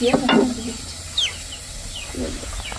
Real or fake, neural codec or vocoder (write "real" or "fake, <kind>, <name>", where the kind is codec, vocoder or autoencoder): real